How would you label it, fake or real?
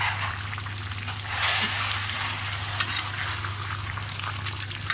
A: real